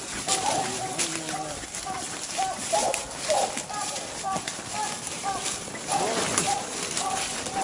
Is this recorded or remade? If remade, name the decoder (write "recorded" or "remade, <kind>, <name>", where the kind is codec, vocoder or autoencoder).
recorded